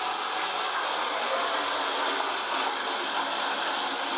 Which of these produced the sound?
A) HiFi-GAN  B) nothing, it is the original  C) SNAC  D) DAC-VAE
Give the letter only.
B